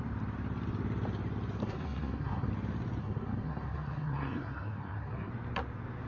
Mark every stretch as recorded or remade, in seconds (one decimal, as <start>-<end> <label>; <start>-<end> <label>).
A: 0.0-1.6 recorded; 1.6-2.5 remade; 2.5-3.0 recorded; 3.0-5.3 remade; 5.3-6.1 recorded